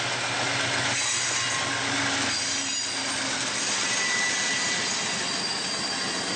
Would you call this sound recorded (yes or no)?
yes